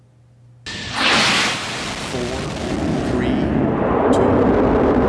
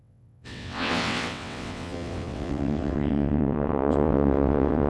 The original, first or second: first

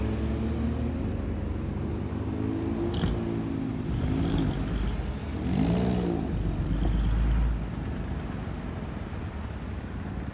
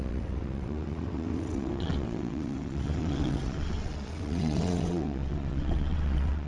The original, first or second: first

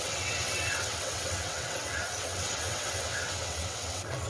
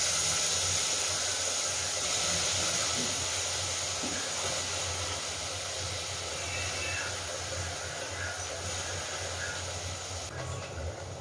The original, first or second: second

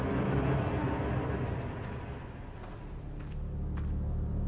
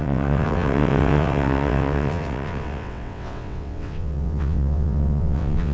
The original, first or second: first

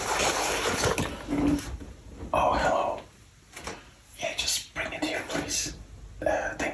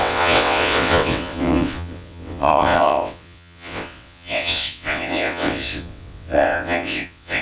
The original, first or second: first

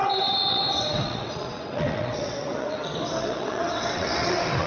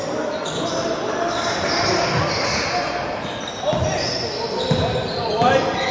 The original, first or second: second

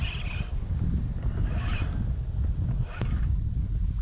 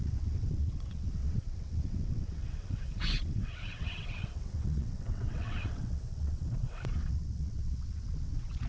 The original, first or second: first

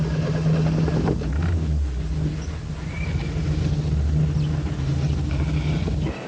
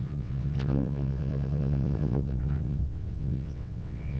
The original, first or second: first